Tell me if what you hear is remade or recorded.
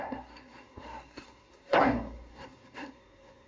remade